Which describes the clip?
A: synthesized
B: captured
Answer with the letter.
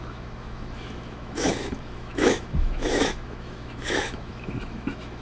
A